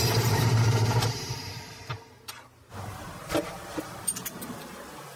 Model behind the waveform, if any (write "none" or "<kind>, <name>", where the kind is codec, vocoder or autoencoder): vocoder, BigVGAN v2